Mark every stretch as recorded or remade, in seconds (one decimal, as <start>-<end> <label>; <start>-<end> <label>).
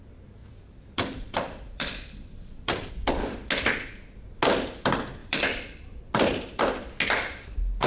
0.0-0.4 recorded; 0.4-2.9 remade; 2.9-5.2 recorded; 5.2-6.0 remade; 6.0-7.9 recorded